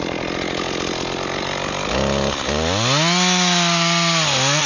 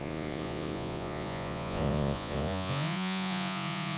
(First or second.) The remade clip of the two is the second